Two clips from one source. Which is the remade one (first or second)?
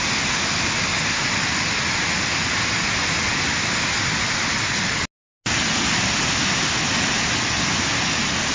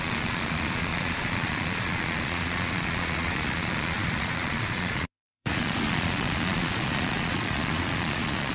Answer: second